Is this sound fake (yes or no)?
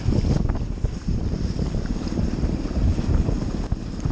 no